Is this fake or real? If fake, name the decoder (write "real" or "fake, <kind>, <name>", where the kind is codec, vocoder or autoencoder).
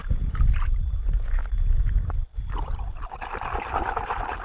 real